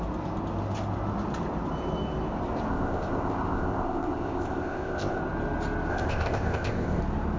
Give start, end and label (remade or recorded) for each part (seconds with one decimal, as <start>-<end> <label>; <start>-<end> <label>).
0.0-2.7 recorded; 2.7-5.2 remade; 5.2-5.9 recorded; 5.9-7.0 remade; 7.0-7.4 recorded